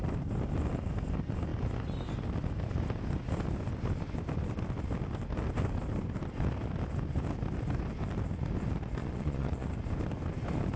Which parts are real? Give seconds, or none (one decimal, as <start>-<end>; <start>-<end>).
0.0-9.0; 9.7-10.8

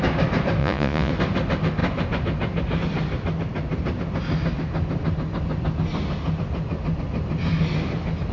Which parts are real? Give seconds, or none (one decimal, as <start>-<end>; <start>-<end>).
0.0-0.6; 1.1-8.3

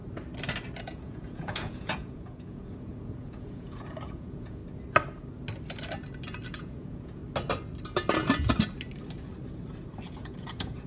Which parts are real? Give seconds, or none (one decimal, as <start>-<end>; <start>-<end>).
0.0-0.8; 4.6-6.6; 7.2-10.1

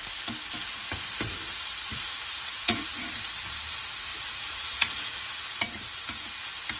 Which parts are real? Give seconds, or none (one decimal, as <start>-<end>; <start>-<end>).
0.0-1.9; 3.0-4.1; 5.4-6.8